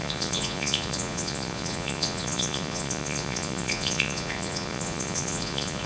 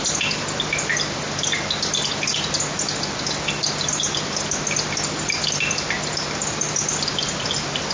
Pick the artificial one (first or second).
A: first